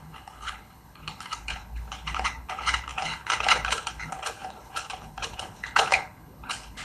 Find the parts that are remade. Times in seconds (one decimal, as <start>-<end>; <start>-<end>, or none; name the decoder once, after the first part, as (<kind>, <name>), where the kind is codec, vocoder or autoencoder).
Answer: 0.0-6.8 (codec, HILCodec)